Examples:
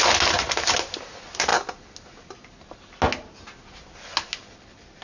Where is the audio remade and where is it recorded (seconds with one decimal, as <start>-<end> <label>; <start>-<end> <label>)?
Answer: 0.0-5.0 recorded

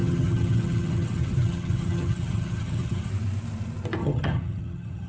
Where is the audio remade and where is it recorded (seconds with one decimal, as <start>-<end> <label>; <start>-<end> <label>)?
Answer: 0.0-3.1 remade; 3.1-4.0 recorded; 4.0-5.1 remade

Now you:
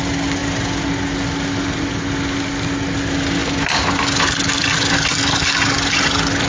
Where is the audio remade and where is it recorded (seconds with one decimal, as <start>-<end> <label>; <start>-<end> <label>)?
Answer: 0.0-6.5 recorded

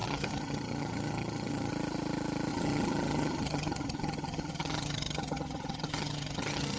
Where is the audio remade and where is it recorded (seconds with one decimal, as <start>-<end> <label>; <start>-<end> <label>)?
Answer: 0.0-1.7 remade; 1.7-2.5 recorded; 2.5-6.8 remade